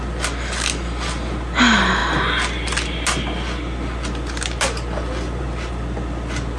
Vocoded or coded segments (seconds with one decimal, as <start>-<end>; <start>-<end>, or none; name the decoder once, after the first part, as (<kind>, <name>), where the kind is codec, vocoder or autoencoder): none